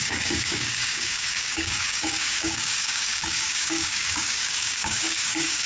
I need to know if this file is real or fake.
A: fake